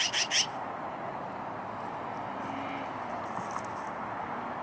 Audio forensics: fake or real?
real